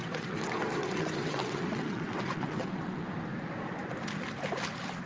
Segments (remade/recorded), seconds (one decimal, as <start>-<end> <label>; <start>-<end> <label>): 0.0-3.1 remade; 3.1-5.1 recorded